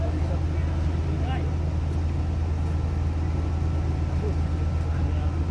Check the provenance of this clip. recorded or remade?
recorded